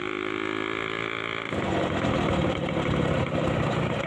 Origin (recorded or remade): recorded